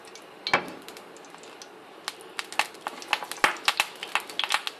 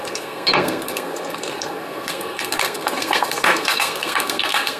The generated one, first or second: second